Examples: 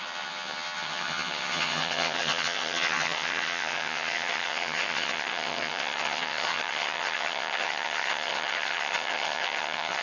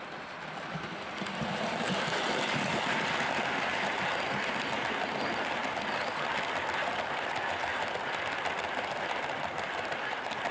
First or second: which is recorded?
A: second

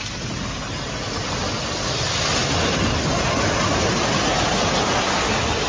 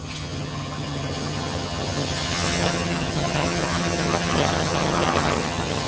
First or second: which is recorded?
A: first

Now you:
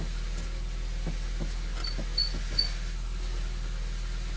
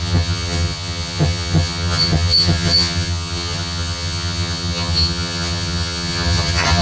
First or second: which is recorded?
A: first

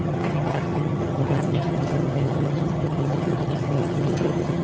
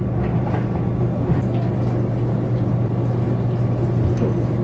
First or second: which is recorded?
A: second